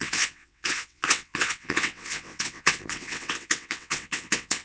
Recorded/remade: remade